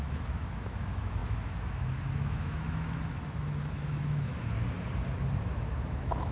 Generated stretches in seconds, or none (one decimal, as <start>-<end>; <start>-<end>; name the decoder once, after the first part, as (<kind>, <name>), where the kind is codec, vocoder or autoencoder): 0.0-4.3 (autoencoder, DAC-VAE); 5.4-6.3